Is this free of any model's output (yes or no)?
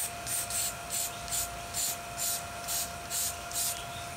yes